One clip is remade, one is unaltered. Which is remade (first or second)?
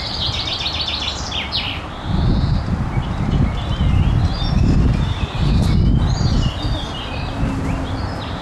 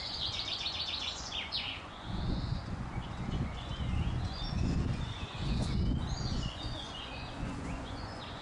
second